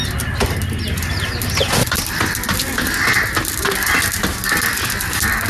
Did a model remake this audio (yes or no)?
no